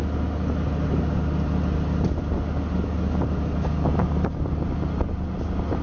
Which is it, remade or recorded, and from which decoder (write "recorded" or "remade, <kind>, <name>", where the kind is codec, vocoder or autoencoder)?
recorded